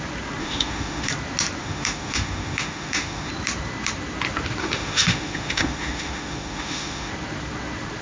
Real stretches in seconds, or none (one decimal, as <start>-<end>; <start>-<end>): 0.0-0.4; 1.1-1.6; 3.3-4.6; 7.1-8.0